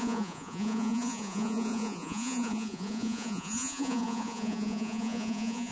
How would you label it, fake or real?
fake